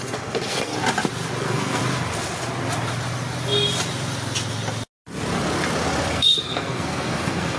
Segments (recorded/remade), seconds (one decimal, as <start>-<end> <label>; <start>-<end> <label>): 0.0-0.7 remade; 0.7-1.4 recorded; 1.4-1.8 remade; 1.8-6.1 recorded; 6.1-7.6 remade